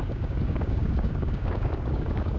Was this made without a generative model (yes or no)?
no